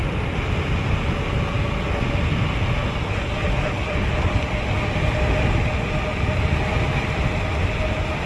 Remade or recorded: recorded